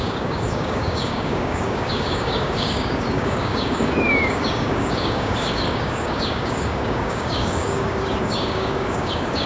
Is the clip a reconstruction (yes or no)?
yes